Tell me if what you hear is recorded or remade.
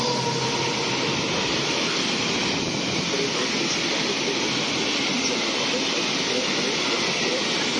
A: recorded